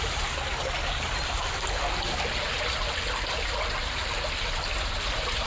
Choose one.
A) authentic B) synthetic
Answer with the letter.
A